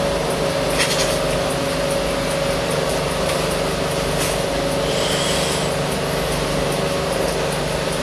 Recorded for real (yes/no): yes